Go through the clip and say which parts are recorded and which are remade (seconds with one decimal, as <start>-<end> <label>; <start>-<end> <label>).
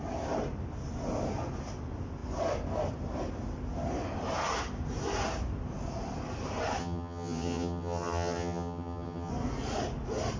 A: 0.0-6.8 recorded; 6.8-9.3 remade; 9.3-10.4 recorded